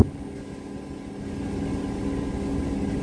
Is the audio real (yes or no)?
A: yes